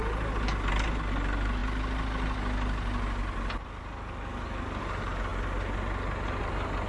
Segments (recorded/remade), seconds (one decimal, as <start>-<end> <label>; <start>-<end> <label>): 0.0-6.9 recorded